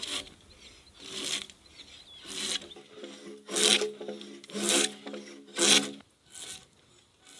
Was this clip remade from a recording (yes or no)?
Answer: no